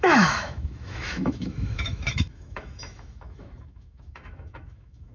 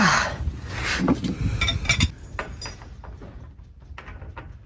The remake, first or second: first